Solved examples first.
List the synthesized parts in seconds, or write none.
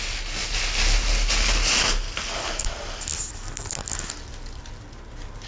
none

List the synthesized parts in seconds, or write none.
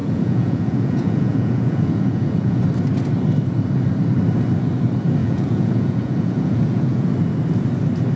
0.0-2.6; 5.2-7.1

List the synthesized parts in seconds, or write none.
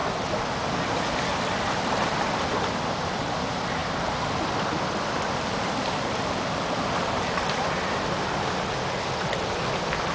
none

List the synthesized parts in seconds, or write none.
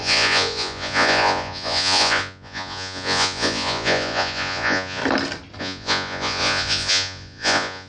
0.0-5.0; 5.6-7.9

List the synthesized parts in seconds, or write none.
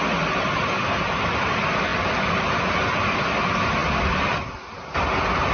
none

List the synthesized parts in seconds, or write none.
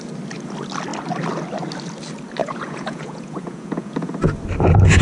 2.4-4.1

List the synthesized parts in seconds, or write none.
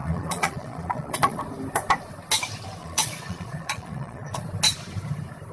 0.0-1.4; 2.8-4.4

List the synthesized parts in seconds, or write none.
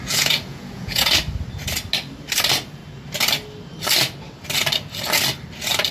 0.0-1.1